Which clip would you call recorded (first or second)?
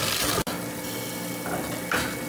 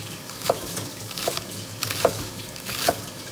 first